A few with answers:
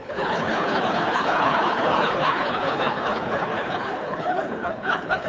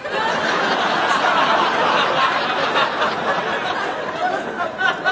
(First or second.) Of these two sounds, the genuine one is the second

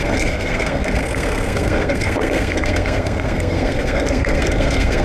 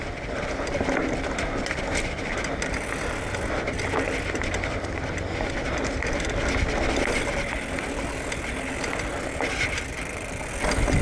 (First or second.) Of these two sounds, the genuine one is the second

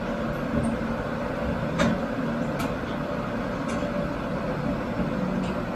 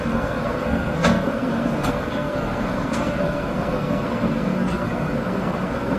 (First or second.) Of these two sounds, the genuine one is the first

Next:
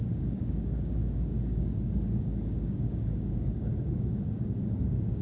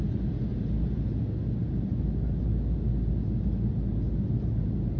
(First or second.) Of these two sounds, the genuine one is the second